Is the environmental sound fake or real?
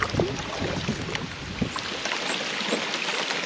real